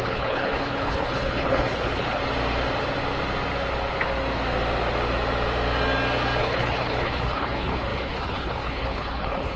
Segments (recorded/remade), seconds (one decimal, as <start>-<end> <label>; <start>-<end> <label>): 0.0-2.2 remade; 2.2-6.4 recorded; 6.4-9.6 remade